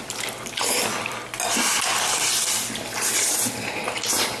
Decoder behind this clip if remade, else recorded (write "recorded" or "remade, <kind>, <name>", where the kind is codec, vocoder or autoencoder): recorded